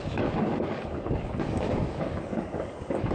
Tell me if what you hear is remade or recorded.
remade